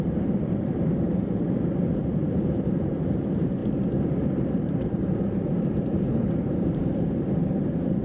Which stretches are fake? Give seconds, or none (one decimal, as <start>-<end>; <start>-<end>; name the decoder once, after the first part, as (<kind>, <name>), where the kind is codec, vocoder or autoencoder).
0.0-3.6 (vocoder, BigVGAN v2); 4.2-8.0

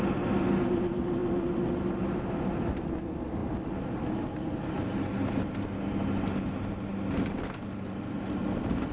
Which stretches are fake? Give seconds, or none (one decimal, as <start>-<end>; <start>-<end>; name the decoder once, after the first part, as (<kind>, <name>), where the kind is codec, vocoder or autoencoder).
none